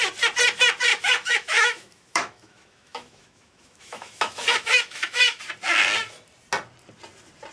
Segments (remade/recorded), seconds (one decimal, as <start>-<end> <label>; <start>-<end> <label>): 0.0-0.9 recorded; 0.9-5.4 remade; 5.4-7.5 recorded